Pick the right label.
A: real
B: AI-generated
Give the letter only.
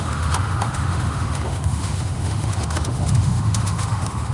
B